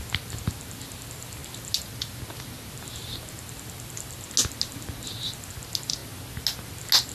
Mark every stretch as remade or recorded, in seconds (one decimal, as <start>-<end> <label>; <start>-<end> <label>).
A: 0.0-7.1 recorded

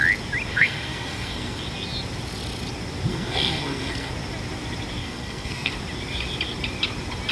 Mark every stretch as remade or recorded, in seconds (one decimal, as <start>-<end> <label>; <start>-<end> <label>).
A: 0.0-0.5 recorded; 0.5-1.6 remade; 1.6-3.1 recorded; 3.1-4.1 remade; 4.1-5.0 recorded; 5.0-5.7 remade; 5.7-7.3 recorded

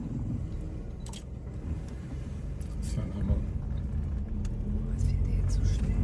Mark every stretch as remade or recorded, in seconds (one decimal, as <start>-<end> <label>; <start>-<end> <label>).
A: 0.0-2.1 recorded; 2.1-3.6 remade; 3.6-5.0 recorded; 5.0-6.0 remade

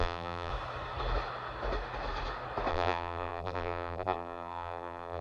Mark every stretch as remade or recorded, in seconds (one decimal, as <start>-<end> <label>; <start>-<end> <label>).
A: 0.0-0.5 remade; 0.5-2.7 recorded; 2.7-5.2 remade

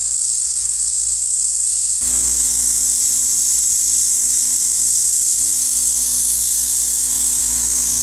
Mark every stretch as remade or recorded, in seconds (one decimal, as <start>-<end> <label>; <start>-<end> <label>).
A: 0.0-3.0 remade; 3.0-4.0 recorded; 4.0-8.0 remade